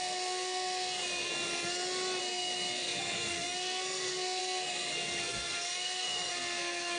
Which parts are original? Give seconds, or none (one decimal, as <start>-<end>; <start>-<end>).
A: 1.3-2.2